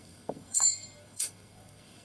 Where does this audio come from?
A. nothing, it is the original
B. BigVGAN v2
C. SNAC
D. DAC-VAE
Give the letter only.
C